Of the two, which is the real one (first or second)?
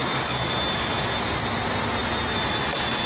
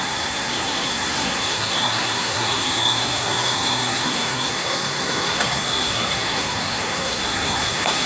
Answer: first